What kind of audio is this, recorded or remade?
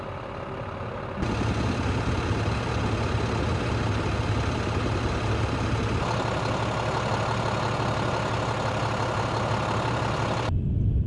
recorded